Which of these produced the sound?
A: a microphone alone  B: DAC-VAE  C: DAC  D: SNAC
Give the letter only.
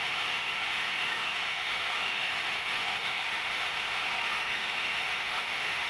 B